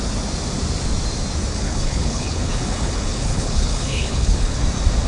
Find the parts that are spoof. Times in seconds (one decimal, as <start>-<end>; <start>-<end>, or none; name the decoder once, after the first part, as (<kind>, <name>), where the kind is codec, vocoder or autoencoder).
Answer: 1.5-4.6 (codec, HILCodec)